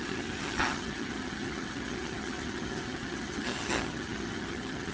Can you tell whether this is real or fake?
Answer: fake